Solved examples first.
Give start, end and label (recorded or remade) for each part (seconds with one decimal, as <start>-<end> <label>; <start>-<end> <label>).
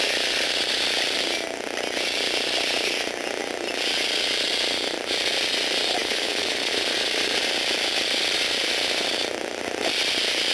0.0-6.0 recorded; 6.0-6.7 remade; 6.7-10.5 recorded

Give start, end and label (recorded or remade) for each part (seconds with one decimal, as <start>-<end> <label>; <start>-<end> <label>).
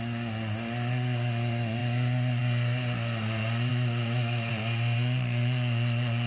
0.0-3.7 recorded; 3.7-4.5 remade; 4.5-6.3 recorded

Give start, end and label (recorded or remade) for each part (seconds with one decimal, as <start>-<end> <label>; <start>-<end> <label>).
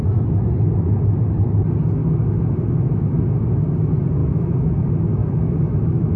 0.0-2.0 recorded; 2.0-3.2 remade; 3.2-4.2 recorded; 4.2-4.7 remade; 4.7-5.2 recorded; 5.2-6.2 remade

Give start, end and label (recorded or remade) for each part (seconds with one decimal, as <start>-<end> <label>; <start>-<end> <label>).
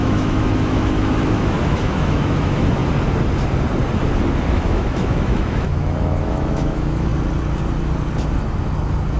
0.0-2.8 remade; 2.8-4.4 recorded; 4.4-7.1 remade; 7.1-9.2 recorded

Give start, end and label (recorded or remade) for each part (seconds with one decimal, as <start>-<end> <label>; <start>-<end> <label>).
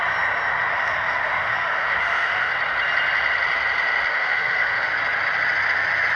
0.0-0.6 recorded; 0.6-2.5 remade; 2.5-4.1 recorded; 4.1-4.9 remade; 4.9-6.2 recorded